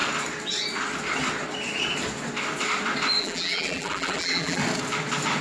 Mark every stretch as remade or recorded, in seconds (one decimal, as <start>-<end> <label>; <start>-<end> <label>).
0.0-3.2 recorded; 3.2-4.6 remade; 4.6-5.4 recorded